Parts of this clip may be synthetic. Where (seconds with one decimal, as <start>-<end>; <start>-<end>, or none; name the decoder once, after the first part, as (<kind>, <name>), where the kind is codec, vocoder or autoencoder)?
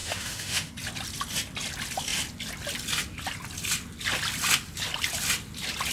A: 0.0-0.7 (autoencoder, DAC-VAE)